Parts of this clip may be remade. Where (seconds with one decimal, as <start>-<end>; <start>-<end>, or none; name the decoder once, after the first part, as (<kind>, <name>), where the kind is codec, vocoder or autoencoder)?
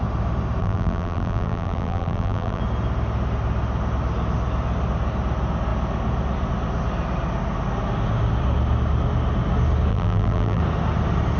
0.6-2.6 (vocoder, BigVGAN v2); 9.9-10.6